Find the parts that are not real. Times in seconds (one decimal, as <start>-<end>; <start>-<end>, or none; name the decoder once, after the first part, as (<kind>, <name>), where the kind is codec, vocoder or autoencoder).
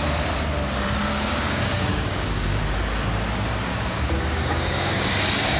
1.1-2.6 (codec, DAC); 3.7-5.1